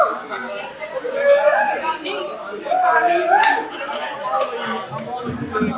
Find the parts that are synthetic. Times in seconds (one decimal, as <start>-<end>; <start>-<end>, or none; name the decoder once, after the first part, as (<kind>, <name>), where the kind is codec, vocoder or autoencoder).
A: none